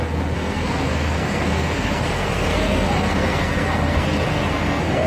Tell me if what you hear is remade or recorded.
remade